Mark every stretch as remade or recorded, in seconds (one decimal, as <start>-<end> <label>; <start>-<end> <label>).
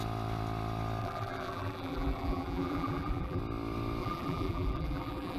0.0-1.0 recorded; 1.0-3.4 remade; 3.4-4.0 recorded; 4.0-5.4 remade